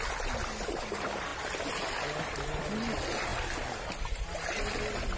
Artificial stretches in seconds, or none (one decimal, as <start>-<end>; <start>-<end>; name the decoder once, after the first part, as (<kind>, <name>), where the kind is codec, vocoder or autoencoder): none